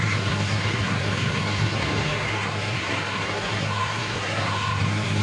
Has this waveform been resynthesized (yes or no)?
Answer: yes